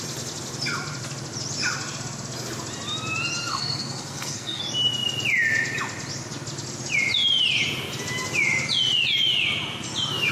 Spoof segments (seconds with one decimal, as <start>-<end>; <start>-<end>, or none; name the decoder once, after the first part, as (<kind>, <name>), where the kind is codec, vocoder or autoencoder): 3.5-4.6 (codec, SNAC)